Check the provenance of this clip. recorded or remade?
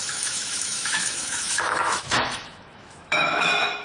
remade